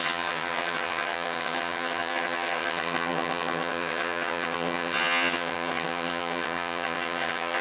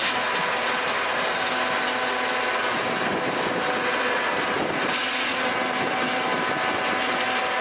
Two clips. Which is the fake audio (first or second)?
first